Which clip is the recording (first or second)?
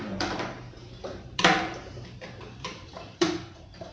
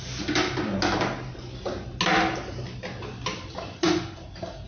second